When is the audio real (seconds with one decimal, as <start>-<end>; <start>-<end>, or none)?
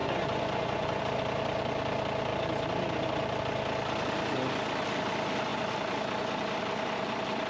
1.0-7.5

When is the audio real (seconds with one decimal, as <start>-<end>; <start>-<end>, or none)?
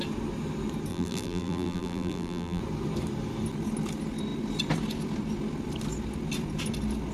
0.0-0.9; 2.6-7.1